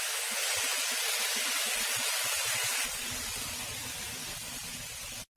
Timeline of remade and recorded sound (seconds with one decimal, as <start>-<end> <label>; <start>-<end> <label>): 0.0-5.4 recorded